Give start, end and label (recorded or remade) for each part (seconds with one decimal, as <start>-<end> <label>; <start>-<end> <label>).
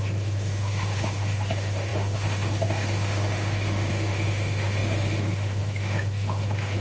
0.0-6.8 remade